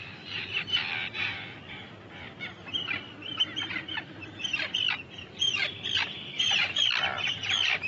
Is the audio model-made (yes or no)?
yes